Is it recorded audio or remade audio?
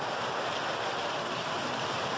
recorded